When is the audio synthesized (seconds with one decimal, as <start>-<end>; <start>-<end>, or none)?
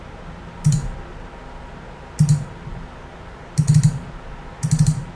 none